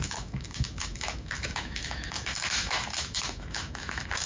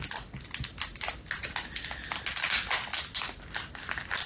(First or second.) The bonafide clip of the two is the second